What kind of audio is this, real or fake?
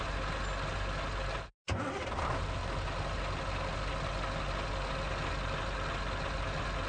real